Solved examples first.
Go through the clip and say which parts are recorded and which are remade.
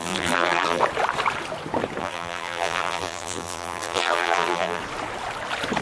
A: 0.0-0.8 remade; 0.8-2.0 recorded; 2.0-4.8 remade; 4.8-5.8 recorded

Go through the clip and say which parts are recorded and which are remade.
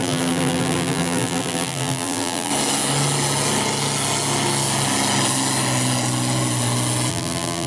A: 0.0-2.5 remade; 2.5-7.1 recorded; 7.1-7.7 remade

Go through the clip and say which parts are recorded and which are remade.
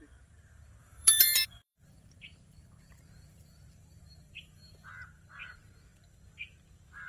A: 0.0-0.8 recorded; 0.8-4.9 remade; 4.9-7.1 recorded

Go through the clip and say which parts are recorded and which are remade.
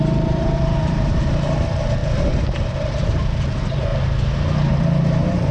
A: 0.0-3.9 remade; 3.9-4.8 recorded; 4.8-5.5 remade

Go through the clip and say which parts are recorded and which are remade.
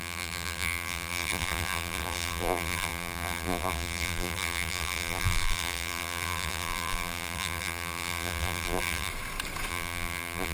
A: 0.0-9.1 remade; 9.1-9.7 recorded; 9.7-10.5 remade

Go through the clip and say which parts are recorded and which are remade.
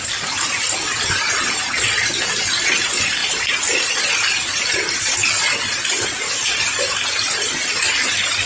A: 0.0-8.5 recorded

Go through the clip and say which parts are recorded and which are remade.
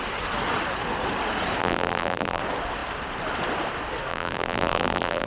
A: 0.0-1.6 recorded; 1.6-2.4 remade; 2.4-4.1 recorded; 4.1-5.3 remade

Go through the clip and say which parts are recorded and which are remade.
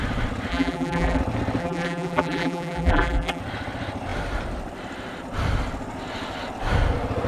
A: 0.0-0.5 recorded; 0.5-1.2 remade; 1.2-1.6 recorded; 1.6-3.4 remade; 3.4-7.3 recorded